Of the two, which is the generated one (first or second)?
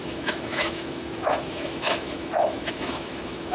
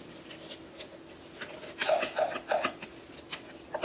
first